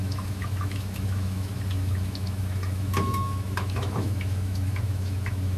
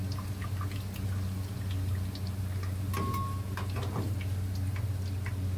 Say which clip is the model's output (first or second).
first